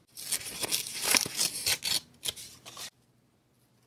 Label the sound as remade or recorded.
recorded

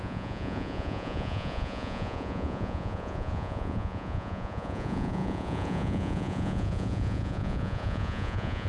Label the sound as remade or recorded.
remade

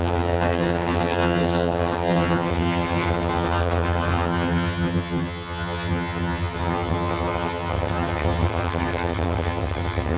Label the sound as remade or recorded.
remade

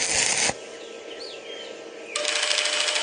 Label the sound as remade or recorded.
recorded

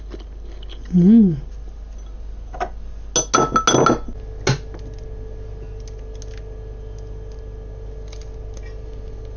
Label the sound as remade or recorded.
recorded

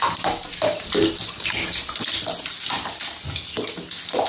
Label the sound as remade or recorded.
recorded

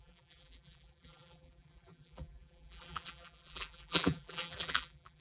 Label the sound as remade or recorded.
remade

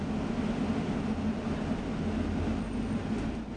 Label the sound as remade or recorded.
recorded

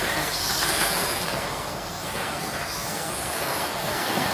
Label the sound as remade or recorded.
remade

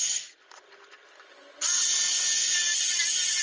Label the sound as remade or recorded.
recorded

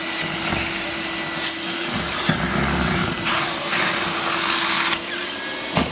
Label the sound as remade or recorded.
recorded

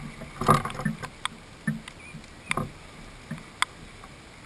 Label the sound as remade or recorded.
recorded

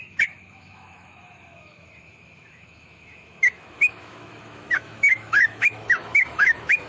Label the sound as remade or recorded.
remade